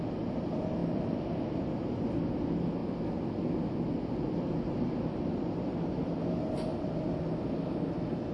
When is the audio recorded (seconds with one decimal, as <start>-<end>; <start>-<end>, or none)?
0.0-8.3